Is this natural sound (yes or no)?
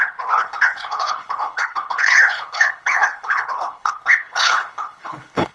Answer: no